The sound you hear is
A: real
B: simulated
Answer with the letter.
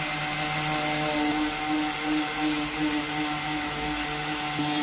A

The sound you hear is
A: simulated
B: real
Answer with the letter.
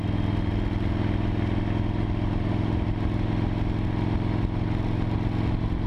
B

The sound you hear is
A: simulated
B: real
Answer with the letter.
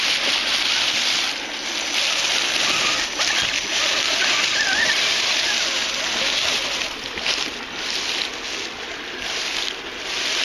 B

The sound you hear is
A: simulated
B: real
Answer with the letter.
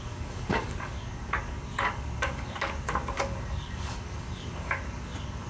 A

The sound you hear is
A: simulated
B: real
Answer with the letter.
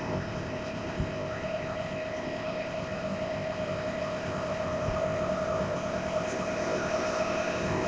A